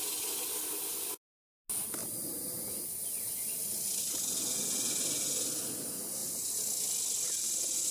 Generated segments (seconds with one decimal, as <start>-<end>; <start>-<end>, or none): none